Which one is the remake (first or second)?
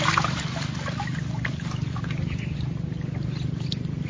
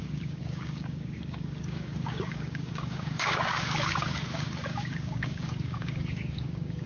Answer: second